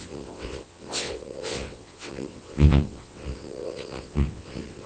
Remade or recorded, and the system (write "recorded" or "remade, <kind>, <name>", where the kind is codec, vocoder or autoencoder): remade, vocoder, WaveNeXt